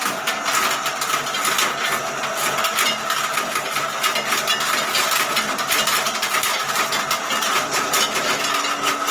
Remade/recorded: recorded